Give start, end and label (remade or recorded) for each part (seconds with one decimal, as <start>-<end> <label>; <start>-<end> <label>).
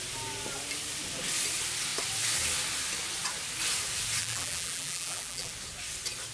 0.0-4.2 recorded; 4.2-5.5 remade; 5.5-6.3 recorded